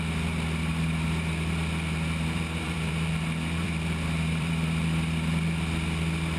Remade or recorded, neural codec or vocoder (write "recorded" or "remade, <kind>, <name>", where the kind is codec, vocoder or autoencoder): remade, vocoder, BigVGAN v2